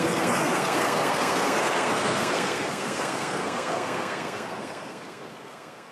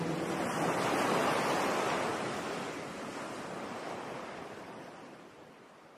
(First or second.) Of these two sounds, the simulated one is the first